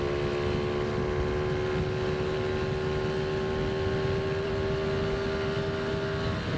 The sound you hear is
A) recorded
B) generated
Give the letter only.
A